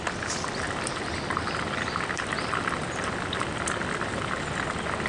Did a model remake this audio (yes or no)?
no